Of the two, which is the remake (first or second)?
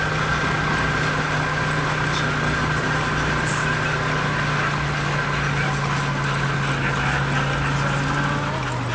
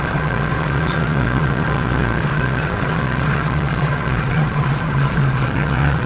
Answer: second